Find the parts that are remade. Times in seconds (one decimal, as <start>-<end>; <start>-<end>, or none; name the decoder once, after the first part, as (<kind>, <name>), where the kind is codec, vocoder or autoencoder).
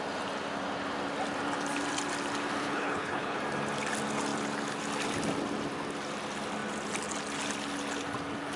2.6-3.4 (codec, HILCodec)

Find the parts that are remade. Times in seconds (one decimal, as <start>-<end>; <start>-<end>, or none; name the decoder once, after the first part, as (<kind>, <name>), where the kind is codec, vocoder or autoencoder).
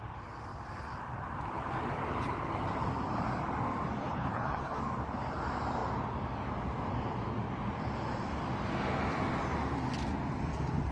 4.0-4.8 (codec, HILCodec)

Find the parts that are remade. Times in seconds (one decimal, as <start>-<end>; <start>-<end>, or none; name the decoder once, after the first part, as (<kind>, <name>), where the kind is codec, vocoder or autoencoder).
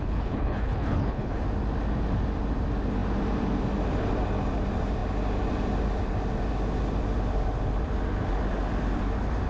0.0-1.4 (codec, HILCodec)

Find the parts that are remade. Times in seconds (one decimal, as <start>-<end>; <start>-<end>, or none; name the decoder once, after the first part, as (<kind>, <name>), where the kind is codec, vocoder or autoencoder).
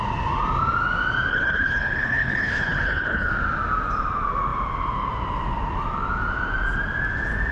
1.3-3.3 (codec, HILCodec)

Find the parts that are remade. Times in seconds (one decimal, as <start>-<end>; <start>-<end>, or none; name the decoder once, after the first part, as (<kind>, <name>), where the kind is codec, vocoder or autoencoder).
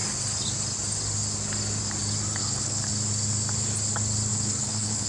2.4-2.9 (codec, HILCodec); 4.3-5.1